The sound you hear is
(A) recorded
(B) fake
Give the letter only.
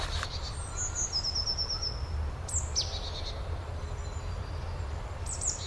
A